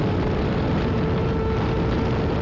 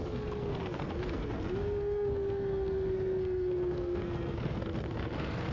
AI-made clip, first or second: second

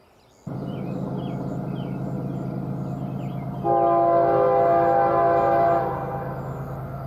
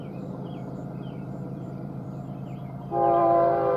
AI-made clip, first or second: second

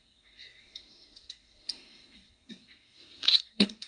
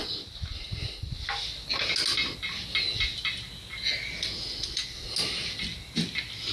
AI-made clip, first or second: first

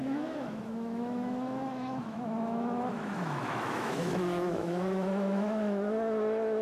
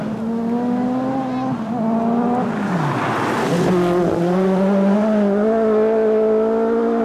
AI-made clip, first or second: first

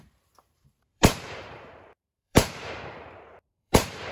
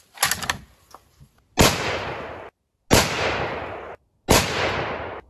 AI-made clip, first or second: first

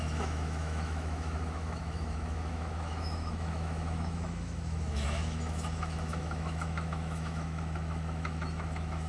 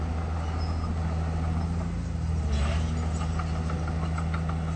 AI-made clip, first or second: first